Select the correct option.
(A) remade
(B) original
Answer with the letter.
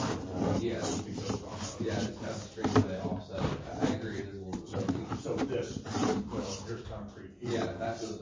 A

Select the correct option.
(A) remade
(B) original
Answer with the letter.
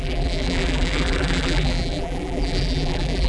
A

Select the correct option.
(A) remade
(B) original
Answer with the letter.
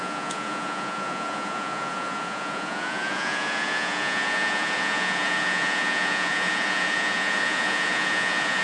A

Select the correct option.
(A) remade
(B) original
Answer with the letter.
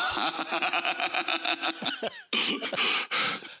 B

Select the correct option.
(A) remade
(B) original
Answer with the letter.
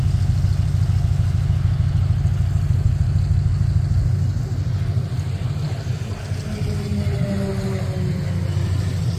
B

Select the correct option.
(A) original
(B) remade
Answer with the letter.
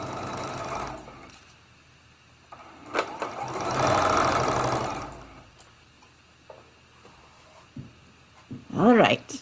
A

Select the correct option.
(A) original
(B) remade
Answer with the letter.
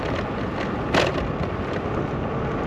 A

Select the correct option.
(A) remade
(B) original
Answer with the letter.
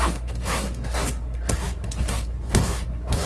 A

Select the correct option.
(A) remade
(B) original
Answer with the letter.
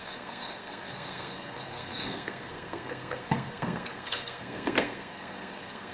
A